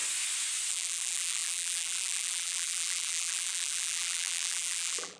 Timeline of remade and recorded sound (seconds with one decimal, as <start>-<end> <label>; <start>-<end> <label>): 0.0-0.7 recorded; 0.7-5.2 remade